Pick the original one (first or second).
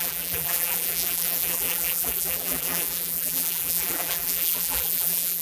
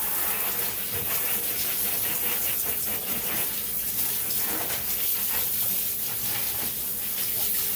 second